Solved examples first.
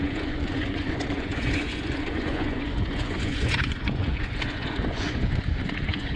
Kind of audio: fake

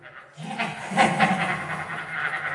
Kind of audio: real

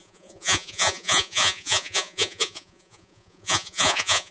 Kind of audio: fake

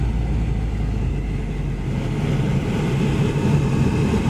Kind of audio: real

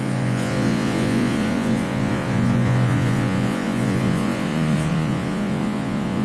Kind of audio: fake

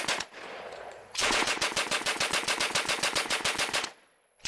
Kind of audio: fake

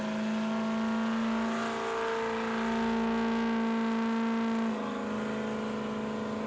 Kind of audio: real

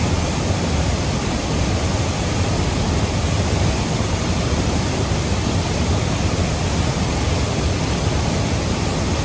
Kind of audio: real